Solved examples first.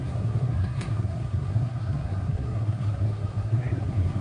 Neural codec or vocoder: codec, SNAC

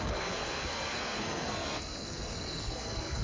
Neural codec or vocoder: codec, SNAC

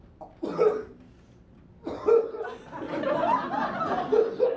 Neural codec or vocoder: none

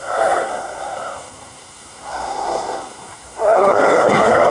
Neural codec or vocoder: codec, SNAC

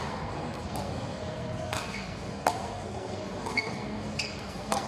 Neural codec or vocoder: codec, SNAC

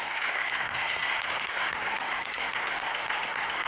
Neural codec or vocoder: codec, SNAC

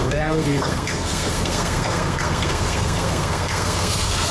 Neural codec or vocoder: codec, SNAC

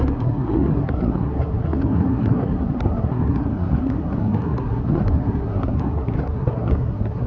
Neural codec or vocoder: codec, SNAC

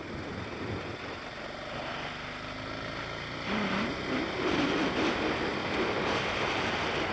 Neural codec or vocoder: none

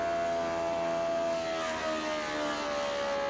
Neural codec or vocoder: none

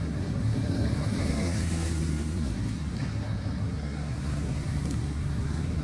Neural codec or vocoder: codec, SNAC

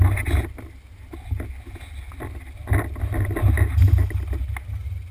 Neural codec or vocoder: none